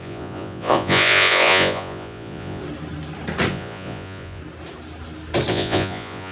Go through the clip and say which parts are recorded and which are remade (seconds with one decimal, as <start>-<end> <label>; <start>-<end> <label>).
0.0-2.6 remade; 2.6-3.5 recorded; 3.5-4.4 remade; 4.4-5.5 recorded; 5.5-6.3 remade